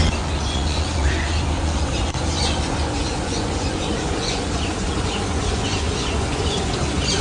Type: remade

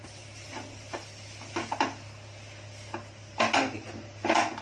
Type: recorded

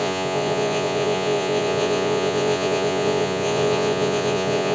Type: remade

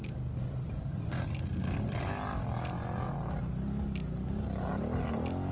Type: recorded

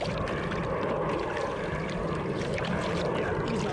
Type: recorded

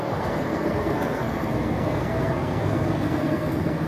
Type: remade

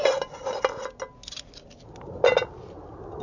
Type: recorded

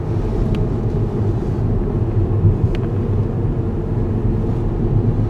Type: recorded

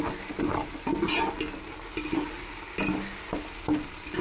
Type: recorded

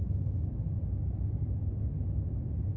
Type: recorded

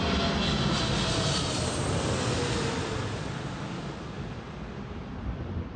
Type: recorded